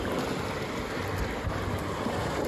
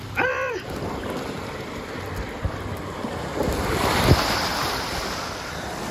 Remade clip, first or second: second